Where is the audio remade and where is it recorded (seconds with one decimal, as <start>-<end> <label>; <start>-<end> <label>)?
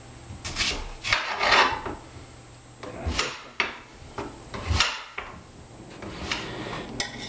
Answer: 0.0-3.9 recorded; 3.9-4.8 remade; 4.8-7.3 recorded